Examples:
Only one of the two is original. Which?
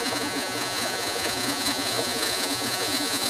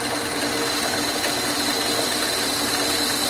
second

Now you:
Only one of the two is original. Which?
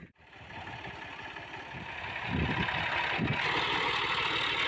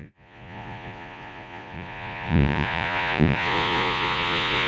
first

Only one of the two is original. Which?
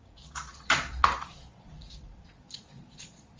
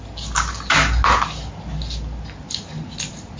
second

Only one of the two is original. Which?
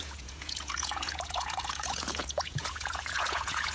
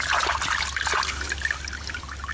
second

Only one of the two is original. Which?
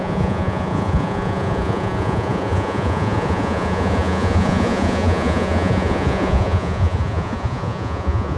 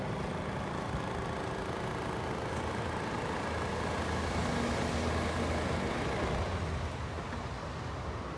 second